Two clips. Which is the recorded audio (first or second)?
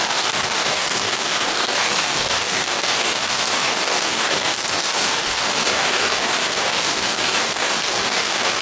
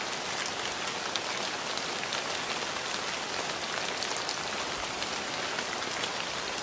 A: second